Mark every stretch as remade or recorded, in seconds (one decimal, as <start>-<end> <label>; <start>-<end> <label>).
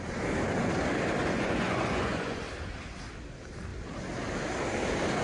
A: 0.0-1.2 recorded; 1.2-2.4 remade; 2.4-5.2 recorded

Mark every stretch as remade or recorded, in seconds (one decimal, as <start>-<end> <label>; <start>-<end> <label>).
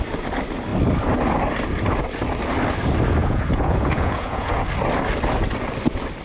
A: 0.0-3.2 recorded; 3.2-4.6 remade; 4.6-6.2 recorded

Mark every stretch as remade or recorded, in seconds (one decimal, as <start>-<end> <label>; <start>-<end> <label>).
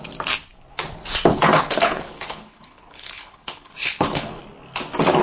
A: 0.0-1.3 recorded; 1.3-4.4 remade; 4.4-5.2 recorded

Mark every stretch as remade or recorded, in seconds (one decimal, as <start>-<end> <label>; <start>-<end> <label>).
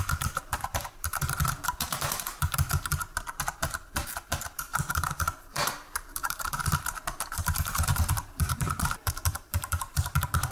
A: 0.0-2.9 remade; 2.9-3.6 recorded; 3.6-10.5 remade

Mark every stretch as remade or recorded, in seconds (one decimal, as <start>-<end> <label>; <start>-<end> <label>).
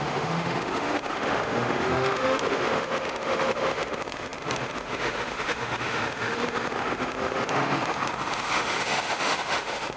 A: 0.0-10.0 remade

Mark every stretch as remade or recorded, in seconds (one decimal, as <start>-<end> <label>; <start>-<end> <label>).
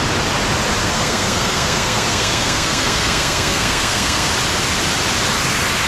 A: 0.0-0.8 recorded; 0.8-4.3 remade; 4.3-5.9 recorded